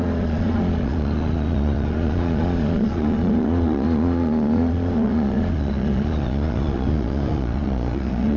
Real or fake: fake